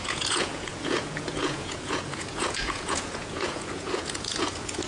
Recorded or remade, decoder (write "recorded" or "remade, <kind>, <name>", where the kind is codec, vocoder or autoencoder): remade, vocoder, Vocos